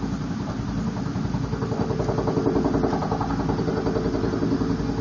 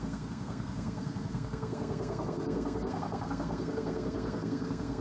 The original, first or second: first